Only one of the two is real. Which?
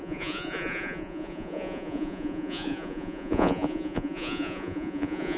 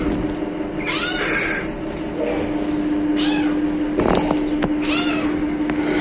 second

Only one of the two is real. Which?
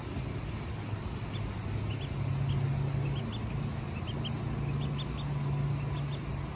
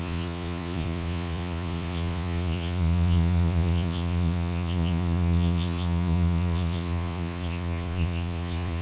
first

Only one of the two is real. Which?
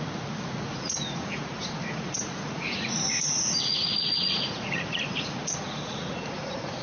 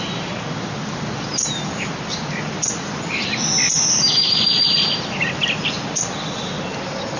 second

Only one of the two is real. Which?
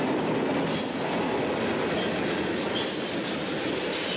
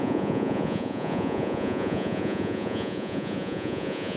first